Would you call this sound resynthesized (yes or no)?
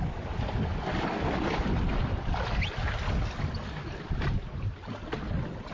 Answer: no